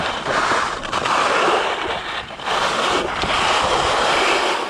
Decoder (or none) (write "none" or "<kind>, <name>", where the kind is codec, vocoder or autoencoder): none